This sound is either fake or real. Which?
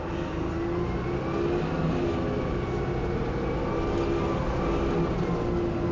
real